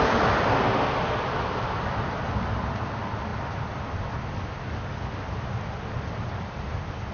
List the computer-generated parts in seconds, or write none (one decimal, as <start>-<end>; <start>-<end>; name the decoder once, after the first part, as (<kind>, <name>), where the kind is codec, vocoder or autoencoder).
none